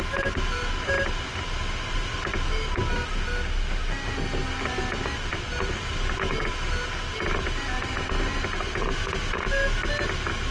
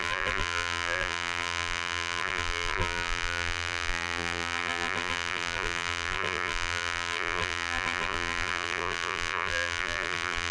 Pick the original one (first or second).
first